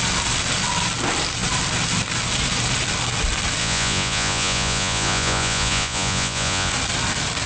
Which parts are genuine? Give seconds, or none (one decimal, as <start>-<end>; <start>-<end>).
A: 0.0-3.6; 6.7-7.5